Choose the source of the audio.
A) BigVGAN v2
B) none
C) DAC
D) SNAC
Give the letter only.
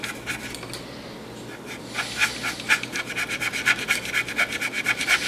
B